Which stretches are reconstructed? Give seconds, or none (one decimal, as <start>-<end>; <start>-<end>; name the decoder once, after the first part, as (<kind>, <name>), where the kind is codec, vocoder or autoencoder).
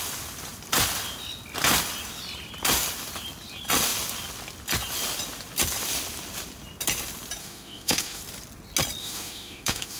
7.4-8.2 (autoencoder, DAC-VAE); 9.0-10.0